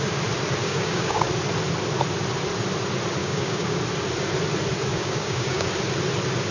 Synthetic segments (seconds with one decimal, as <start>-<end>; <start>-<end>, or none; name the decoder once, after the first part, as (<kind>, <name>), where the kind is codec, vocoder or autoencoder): 0.6-1.3 (codec, DAC); 3.2-3.8; 4.9-5.7